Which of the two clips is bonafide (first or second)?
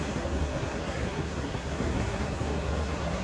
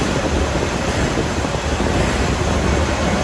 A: second